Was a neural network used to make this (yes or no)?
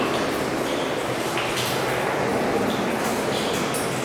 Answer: no